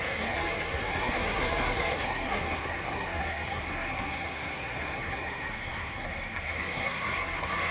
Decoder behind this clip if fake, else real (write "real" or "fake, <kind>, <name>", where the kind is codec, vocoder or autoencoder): fake, codec, SNAC